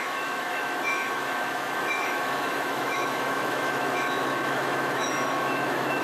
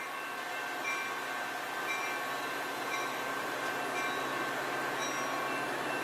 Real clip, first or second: second